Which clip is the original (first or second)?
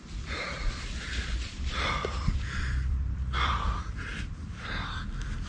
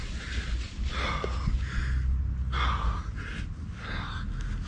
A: second